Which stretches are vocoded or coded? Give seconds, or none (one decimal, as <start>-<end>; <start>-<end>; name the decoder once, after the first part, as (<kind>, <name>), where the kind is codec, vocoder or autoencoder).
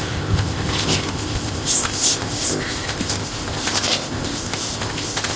0.0-5.4 (codec, ZipCodec)